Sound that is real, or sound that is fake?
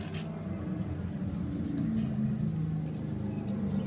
real